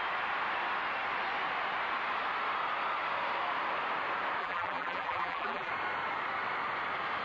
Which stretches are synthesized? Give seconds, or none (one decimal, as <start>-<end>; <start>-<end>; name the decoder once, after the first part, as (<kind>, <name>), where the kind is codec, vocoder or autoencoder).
4.4-5.7 (vocoder, BigVGAN v2)